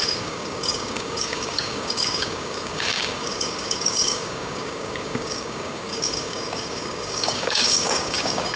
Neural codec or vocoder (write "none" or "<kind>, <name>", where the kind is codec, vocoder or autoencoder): codec, DAC